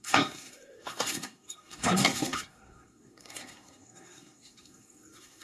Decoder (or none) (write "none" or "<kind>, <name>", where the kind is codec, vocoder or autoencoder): codec, SNAC